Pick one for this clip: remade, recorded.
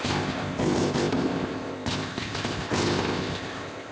remade